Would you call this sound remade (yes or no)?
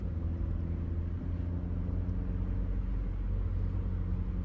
no